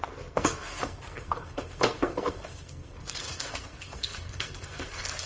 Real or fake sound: fake